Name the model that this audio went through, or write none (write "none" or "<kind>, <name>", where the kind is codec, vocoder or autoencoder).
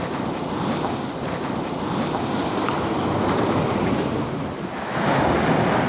none